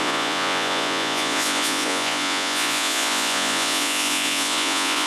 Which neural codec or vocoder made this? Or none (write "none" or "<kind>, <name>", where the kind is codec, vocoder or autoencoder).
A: vocoder, Vocos